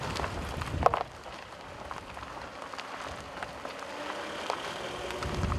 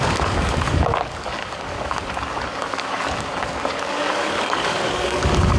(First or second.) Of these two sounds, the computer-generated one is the second